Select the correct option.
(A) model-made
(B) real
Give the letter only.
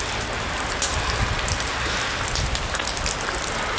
A